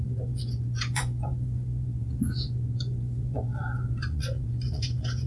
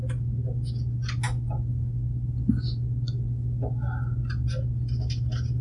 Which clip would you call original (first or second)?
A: second